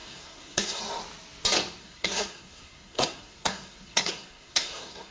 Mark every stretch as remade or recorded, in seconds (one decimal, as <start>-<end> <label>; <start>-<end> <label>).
0.0-0.8 remade; 0.8-1.8 recorded; 1.8-5.1 remade